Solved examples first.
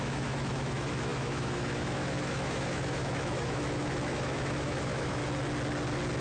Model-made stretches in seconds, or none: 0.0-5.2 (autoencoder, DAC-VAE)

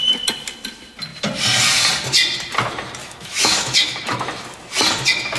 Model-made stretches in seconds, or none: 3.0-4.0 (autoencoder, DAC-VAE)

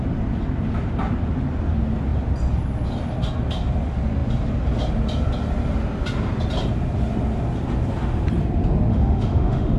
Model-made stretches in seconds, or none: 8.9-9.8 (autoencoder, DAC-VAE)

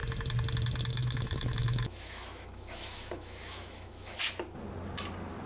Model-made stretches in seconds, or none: 0.9-4.2 (autoencoder, DAC-VAE)

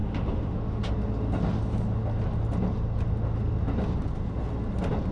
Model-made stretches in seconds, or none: 0.0-0.8 (autoencoder, DAC-VAE)

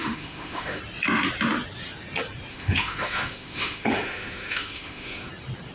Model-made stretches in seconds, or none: 0.0-0.8 (autoencoder, DAC-VAE); 2.5-5.3